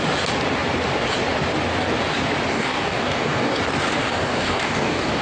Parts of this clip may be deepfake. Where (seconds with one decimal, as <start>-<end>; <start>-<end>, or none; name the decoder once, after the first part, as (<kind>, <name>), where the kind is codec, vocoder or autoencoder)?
2.5-3.6 (codec, DAC); 4.0-5.2